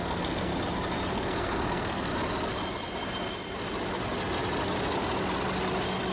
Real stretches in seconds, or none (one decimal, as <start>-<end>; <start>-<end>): 0.5-1.1; 2.1-6.1